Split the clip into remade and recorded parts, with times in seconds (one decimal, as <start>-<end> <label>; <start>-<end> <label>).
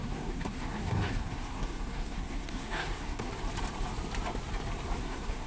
0.0-3.3 remade; 3.3-5.0 recorded; 5.0-5.5 remade